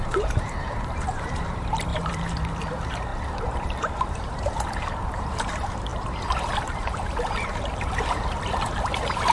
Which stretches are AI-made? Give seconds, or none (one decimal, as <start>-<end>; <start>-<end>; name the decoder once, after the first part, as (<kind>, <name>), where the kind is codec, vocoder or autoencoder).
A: 0.0-9.3 (vocoder, BigVGAN v2)